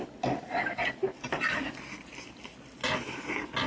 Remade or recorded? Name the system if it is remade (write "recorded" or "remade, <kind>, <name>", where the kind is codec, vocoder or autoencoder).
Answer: recorded